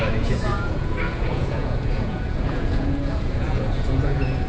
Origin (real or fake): fake